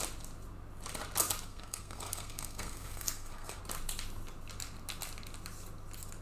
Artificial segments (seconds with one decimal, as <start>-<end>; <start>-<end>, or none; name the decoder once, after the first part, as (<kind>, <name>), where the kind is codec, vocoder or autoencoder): 1.5-3.6 (codec, SNAC)